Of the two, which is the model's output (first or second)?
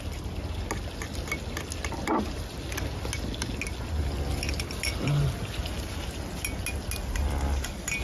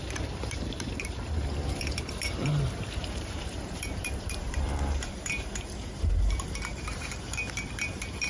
second